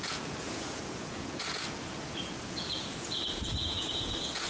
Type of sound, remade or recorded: remade